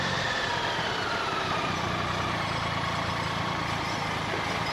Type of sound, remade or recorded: remade